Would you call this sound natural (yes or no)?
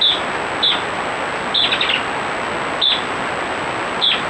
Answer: yes